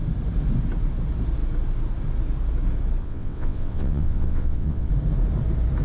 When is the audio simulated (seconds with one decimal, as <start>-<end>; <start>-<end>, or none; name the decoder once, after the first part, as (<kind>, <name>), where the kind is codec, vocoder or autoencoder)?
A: 3.0-4.9 (vocoder, WaveNeXt)